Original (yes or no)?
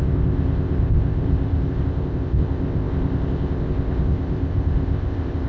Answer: no